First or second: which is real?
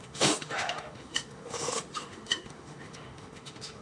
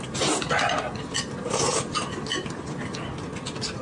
second